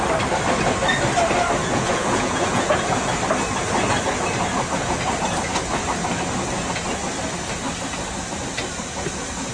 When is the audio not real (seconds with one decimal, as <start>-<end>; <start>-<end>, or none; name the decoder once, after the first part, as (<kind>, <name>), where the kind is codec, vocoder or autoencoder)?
1.6-3.1 (vocoder, Vocos)